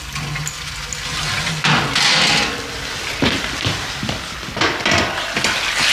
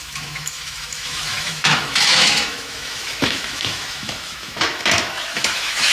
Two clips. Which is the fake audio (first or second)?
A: second